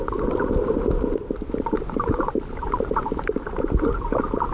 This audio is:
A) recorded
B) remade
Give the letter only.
A